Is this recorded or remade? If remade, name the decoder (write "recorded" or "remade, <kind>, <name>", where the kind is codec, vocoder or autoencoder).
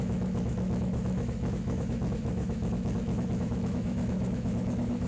remade, autoencoder, DAC-VAE